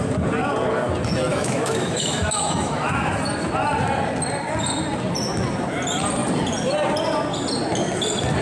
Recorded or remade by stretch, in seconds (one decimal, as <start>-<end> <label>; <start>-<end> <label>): 0.0-1.3 recorded; 1.3-3.1 remade; 3.1-8.4 recorded